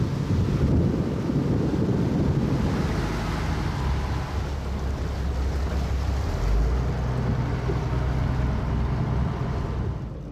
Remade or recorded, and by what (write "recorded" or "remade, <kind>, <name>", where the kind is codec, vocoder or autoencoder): recorded